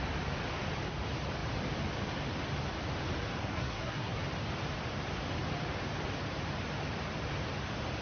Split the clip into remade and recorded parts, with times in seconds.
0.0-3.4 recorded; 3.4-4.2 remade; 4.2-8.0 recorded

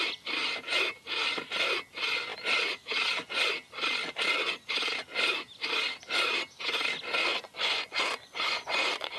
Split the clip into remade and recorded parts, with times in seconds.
0.0-7.3 recorded; 7.3-9.2 remade

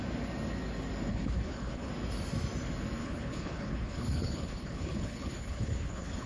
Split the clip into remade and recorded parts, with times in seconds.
0.0-1.1 recorded; 1.1-1.9 remade; 1.9-3.0 recorded; 3.0-6.3 remade